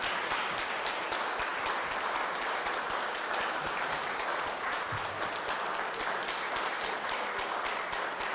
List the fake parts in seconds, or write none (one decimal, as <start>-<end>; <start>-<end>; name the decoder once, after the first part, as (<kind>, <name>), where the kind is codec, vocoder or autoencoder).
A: 4.3-4.8 (vocoder, Vocos)